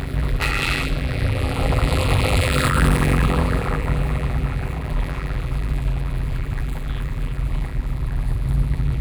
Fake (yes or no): yes